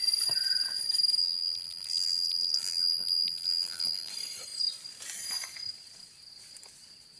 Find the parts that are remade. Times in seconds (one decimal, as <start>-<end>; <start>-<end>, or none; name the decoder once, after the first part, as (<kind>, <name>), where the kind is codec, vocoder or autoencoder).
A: 1.2-4.1 (vocoder, BigVGAN v2)